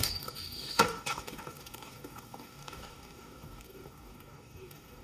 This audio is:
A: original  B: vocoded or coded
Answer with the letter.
B